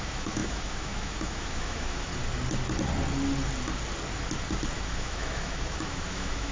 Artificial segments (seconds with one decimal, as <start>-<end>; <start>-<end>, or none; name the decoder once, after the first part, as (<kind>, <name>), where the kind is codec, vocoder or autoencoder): 0.0-2.1 (autoencoder, DAC-VAE); 4.7-6.5